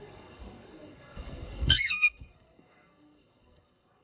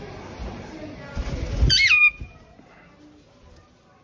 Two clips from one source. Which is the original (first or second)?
second